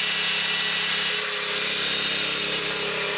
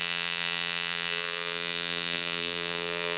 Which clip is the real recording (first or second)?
first